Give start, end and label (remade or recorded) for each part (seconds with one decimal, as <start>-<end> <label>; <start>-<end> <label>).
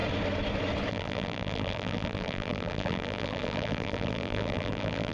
0.0-0.9 recorded; 0.9-5.1 remade